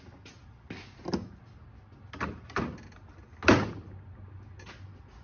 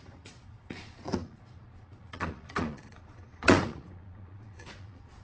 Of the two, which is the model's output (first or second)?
second